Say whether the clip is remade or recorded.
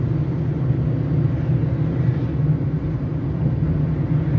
recorded